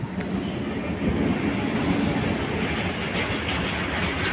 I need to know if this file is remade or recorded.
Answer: recorded